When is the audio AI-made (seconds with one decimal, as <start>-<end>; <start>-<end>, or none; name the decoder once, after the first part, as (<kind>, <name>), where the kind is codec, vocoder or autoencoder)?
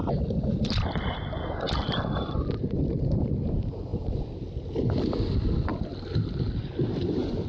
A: none